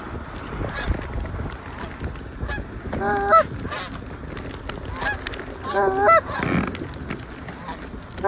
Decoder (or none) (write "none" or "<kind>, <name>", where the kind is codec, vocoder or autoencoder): none